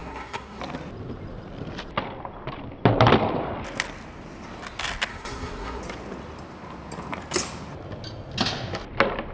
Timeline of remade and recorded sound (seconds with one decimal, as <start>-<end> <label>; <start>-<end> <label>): 0.0-0.6 remade; 0.6-5.1 recorded; 5.1-5.8 remade; 5.8-9.3 recorded